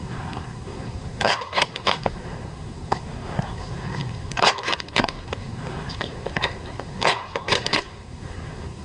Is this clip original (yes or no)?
no